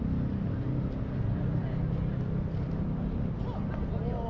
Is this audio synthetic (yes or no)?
no